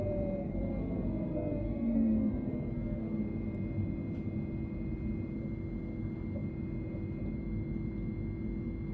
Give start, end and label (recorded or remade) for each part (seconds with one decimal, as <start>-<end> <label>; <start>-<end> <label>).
0.0-0.4 recorded; 0.4-3.2 remade; 3.2-8.9 recorded